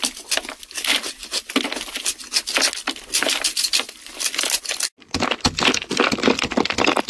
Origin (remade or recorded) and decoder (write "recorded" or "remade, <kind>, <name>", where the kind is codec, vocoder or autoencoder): recorded